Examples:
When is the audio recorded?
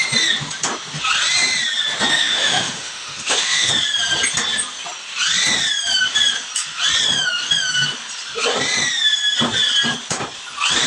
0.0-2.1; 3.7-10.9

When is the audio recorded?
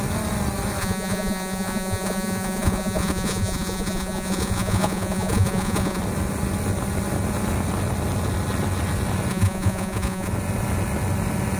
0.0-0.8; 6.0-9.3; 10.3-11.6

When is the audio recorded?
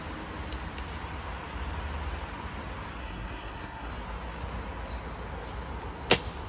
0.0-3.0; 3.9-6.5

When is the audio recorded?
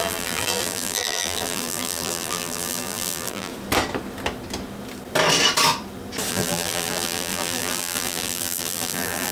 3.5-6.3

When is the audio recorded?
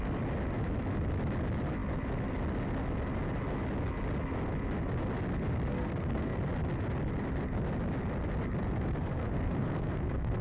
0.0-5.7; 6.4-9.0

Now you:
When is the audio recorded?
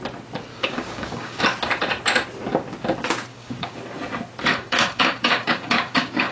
0.0-0.5; 1.4-3.3; 3.8-4.5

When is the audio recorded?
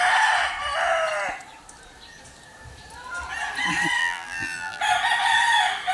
0.0-4.0; 4.8-5.9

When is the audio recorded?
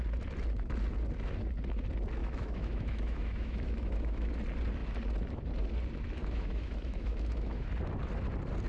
0.0-2.2; 4.3-6.2; 7.7-8.7